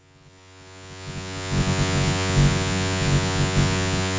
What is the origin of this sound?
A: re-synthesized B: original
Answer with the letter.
A